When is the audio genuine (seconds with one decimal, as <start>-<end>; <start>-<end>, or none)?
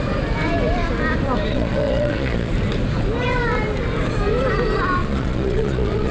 0.0-1.5; 2.5-5.0